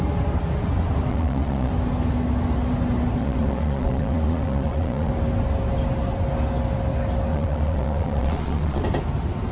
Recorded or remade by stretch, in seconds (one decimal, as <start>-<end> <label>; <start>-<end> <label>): 0.0-1.1 recorded; 1.1-1.7 remade; 1.7-3.2 recorded; 3.2-5.1 remade; 5.1-7.3 recorded; 7.3-8.8 remade; 8.8-9.5 recorded